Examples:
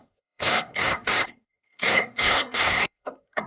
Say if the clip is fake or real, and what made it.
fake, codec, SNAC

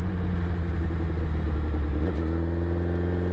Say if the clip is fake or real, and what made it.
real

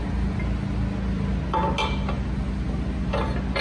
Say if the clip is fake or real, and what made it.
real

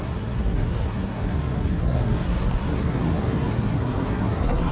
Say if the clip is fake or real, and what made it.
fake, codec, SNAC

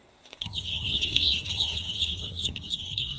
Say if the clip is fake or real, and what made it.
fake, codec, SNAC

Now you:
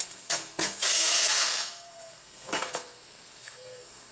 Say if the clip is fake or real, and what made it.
fake, codec, SNAC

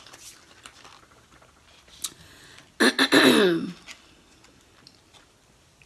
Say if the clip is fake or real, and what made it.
real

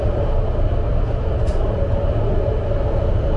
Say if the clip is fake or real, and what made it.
real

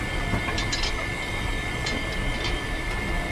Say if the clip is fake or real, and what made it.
real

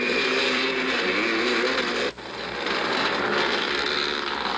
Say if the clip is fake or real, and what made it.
real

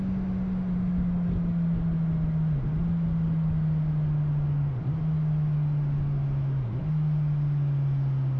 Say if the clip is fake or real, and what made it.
real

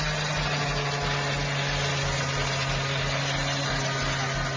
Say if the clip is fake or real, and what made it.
real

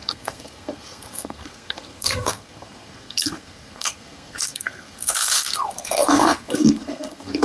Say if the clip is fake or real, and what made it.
fake, codec, SNAC